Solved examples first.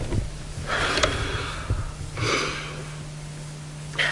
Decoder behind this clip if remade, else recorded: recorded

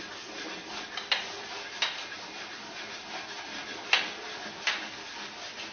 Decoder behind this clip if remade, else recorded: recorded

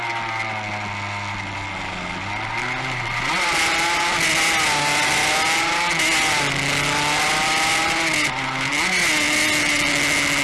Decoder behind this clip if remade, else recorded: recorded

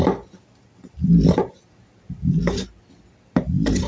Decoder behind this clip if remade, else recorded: recorded